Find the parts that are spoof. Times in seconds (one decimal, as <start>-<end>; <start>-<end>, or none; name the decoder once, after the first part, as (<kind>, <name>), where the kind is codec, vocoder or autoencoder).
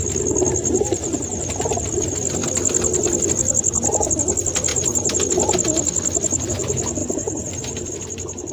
4.7-5.2 (vocoder, BigVGAN v2); 7.0-7.9